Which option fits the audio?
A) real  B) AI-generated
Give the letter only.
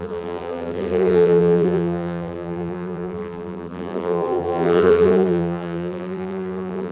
B